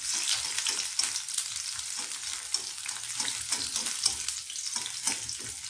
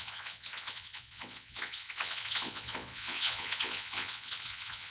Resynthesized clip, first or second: second